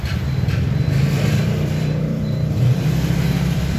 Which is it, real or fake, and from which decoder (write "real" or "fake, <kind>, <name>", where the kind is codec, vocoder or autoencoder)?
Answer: fake, vocoder, BigVGAN v2